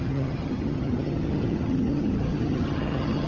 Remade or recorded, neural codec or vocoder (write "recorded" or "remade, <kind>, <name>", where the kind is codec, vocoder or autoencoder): remade, vocoder, HiFi-GAN